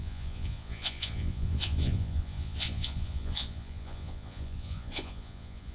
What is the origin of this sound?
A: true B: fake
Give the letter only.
B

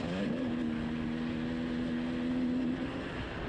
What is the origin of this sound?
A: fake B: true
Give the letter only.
B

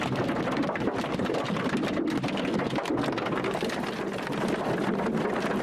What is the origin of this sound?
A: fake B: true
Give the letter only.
B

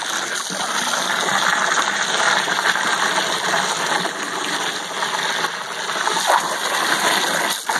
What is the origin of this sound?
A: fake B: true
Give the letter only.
B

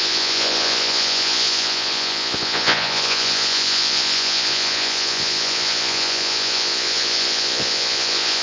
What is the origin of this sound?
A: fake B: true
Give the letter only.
A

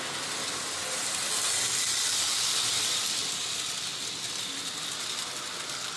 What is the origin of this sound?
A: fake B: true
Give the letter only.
B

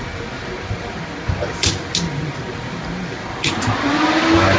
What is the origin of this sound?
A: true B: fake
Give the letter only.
A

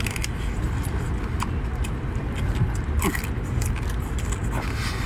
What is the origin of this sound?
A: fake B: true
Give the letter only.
B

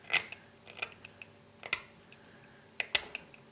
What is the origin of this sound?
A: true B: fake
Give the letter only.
A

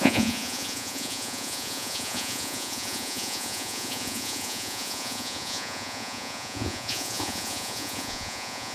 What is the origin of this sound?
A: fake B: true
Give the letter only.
A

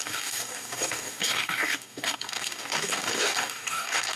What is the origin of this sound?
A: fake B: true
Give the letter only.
A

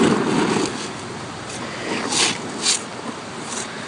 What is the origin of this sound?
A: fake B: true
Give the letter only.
B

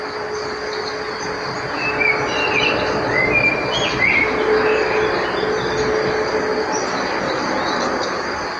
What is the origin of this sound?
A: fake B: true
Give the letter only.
B